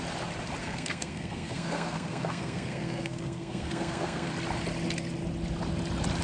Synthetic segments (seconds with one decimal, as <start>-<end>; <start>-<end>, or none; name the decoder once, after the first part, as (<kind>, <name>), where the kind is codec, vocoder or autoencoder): 0.6-4.3 (codec, SNAC)